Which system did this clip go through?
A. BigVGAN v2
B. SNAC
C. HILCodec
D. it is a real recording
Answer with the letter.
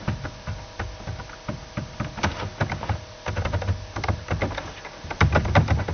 D